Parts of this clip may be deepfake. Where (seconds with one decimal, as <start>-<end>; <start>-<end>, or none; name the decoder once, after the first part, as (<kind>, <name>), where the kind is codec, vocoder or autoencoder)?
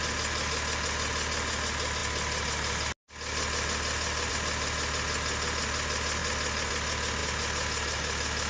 none